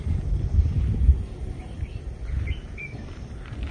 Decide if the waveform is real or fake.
real